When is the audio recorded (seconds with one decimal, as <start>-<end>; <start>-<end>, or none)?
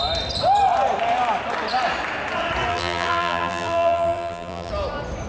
0.0-2.7; 4.7-5.3